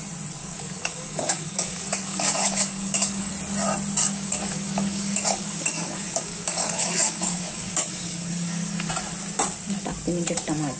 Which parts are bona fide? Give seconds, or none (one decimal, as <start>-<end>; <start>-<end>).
0.0-0.4; 3.3-4.0; 8.9-10.8